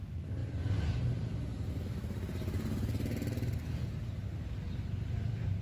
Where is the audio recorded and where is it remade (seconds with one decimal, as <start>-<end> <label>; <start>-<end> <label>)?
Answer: 0.0-5.6 recorded